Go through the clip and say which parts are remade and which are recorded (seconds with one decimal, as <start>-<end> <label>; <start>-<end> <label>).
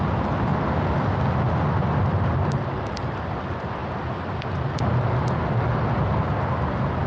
0.0-0.5 remade; 0.5-1.8 recorded; 1.8-3.8 remade; 3.8-6.5 recorded; 6.5-7.1 remade